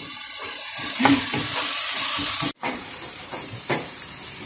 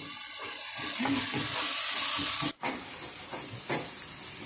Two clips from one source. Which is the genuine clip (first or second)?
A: second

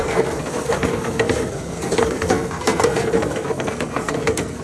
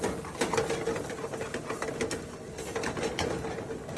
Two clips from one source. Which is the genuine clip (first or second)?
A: second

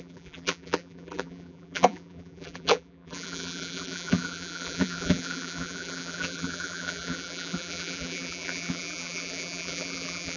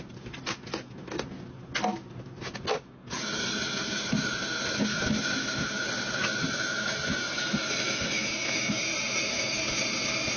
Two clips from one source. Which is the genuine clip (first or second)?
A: second